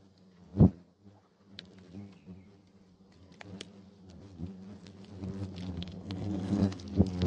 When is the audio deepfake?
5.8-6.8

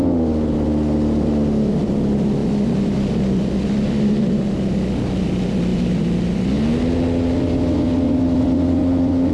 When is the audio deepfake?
none

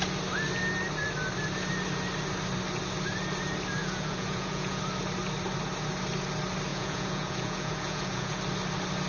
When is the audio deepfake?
3.8-4.8; 6.7-8.4

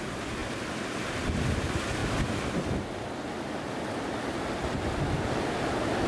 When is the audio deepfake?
0.4-1.2; 2.0-5.2

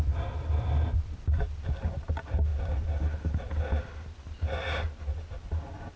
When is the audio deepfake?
none